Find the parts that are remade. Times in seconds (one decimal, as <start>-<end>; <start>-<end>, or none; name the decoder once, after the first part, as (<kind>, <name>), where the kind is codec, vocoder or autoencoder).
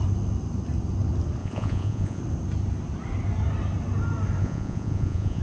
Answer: 1.4-2.2 (vocoder, Vocos); 4.4-5.4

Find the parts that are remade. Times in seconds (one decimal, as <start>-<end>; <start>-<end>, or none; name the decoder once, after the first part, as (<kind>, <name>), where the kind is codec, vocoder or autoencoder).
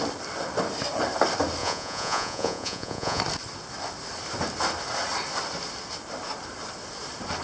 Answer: 1.6-3.2 (vocoder, Vocos)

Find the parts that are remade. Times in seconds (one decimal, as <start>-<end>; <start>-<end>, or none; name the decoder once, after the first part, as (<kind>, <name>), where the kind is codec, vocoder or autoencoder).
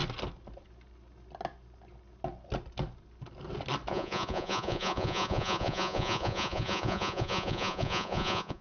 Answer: 3.9-8.6 (vocoder, Vocos)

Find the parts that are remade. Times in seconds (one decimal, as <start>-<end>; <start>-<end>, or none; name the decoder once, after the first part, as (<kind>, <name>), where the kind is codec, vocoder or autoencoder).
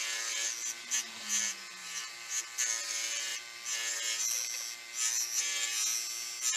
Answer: none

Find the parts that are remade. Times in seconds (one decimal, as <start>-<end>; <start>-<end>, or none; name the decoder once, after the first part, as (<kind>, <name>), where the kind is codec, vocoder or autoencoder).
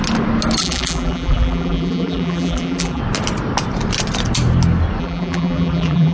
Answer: 0.6-3.0 (vocoder, BigVGAN v2); 5.0-6.1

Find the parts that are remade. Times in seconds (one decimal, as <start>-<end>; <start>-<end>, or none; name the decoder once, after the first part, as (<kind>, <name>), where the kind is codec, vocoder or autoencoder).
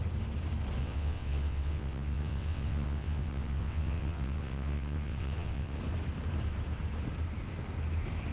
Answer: 0.8-5.8 (vocoder, WaveNeXt)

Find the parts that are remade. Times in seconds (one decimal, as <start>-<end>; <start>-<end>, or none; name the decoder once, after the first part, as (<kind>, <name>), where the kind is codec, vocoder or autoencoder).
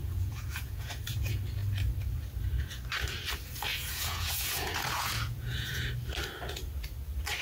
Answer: 0.0-0.9 (vocoder, Vocos); 3.7-5.8